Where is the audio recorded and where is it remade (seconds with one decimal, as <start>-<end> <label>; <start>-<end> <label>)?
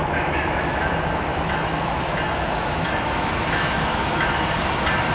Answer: 0.0-0.9 remade; 0.9-1.3 recorded; 1.3-4.4 remade; 4.4-5.1 recorded